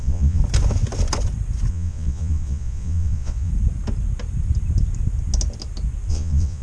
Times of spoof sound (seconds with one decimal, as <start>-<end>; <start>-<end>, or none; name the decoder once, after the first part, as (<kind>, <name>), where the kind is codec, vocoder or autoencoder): 0.0-0.4 (vocoder, Vocos); 1.7-3.5; 6.1-6.6